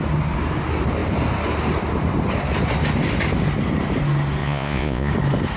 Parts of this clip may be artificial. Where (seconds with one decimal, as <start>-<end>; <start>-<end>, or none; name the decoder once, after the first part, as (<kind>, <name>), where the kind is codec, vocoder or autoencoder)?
4.4-5.1 (vocoder, Vocos)